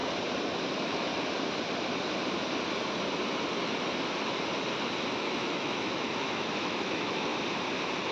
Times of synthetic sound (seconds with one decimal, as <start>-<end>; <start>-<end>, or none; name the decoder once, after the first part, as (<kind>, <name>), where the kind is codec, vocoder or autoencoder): 0.7-1.1 (autoencoder, DAC-VAE); 5.1-7.3